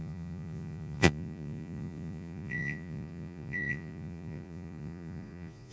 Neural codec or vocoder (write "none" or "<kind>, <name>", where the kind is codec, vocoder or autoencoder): vocoder, Vocos